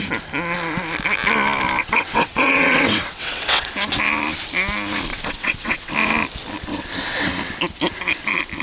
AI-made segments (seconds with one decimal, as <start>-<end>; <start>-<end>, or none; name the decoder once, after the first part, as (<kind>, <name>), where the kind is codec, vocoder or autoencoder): 1.8-3.7 (vocoder, WaveNeXt); 5.1-5.9; 6.7-7.3